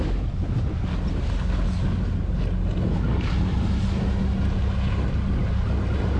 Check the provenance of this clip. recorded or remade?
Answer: recorded